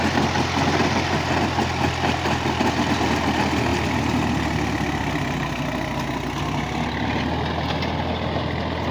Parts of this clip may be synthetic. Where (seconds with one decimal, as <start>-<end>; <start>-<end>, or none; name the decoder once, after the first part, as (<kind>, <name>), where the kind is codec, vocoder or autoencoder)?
none